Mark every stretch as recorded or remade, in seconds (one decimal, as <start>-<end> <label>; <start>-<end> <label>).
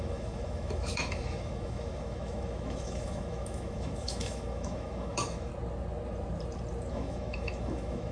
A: 0.0-5.5 remade; 5.5-6.9 recorded; 6.9-8.1 remade